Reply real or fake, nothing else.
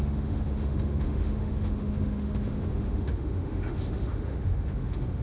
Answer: fake